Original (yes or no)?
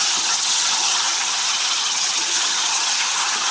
no